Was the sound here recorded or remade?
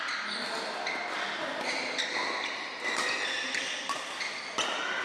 recorded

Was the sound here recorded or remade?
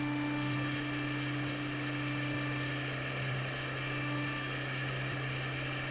recorded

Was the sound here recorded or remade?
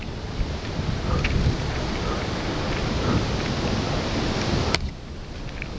recorded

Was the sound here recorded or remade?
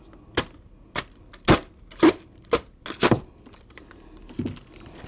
recorded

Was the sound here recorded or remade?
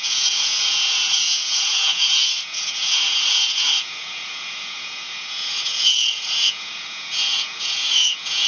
remade